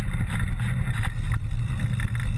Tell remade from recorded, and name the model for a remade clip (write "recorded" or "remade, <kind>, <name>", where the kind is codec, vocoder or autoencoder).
recorded